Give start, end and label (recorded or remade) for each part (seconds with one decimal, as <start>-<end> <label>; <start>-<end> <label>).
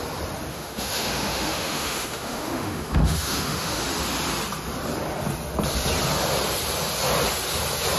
0.0-0.5 recorded; 0.5-3.8 remade; 3.8-8.0 recorded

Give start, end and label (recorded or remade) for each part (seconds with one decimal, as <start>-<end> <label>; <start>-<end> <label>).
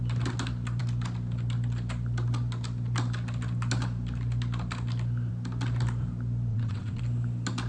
0.0-6.5 recorded; 6.5-7.0 remade; 7.0-7.7 recorded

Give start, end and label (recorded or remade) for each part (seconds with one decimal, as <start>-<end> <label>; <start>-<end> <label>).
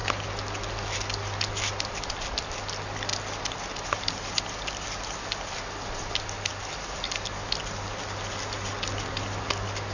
0.0-9.9 recorded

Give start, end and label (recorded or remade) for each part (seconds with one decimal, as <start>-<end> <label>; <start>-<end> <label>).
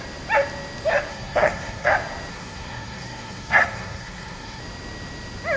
0.0-1.1 recorded; 1.1-1.9 remade; 1.9-2.3 recorded; 2.3-4.6 remade; 4.6-5.6 recorded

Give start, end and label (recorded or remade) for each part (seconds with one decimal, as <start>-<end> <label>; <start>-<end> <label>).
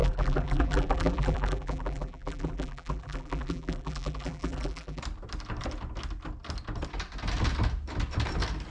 0.0-5.0 remade; 5.0-8.7 recorded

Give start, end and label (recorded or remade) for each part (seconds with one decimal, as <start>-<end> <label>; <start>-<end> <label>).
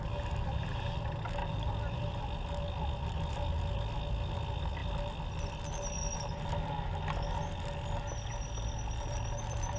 0.0-1.4 recorded; 1.4-2.2 remade; 2.2-9.8 recorded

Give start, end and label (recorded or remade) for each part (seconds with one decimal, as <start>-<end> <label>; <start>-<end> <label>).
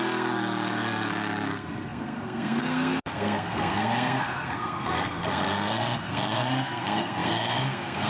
0.0-8.1 remade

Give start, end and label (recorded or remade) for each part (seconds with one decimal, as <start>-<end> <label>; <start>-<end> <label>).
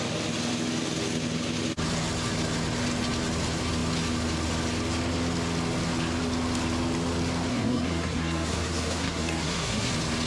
0.0-7.5 recorded; 7.5-9.9 remade; 9.9-10.3 recorded